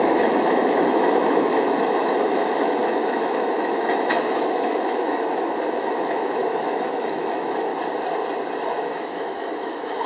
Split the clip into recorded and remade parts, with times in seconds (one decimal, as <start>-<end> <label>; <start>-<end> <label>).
0.0-7.7 remade; 7.7-8.8 recorded; 8.8-10.1 remade